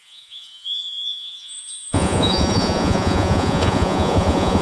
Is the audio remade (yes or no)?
yes